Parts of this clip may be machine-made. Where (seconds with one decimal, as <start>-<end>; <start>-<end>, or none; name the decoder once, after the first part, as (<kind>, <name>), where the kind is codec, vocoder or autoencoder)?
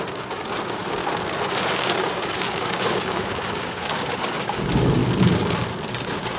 0.0-1.0 (codec, DAC); 1.7-5.0; 5.9-6.4